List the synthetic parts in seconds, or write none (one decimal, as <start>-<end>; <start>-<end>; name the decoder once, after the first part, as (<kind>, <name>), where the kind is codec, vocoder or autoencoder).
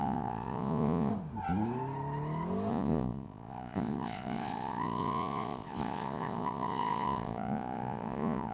0.0-1.1 (vocoder, Vocos); 2.7-8.5